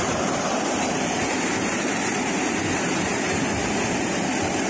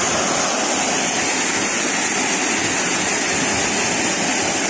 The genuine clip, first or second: second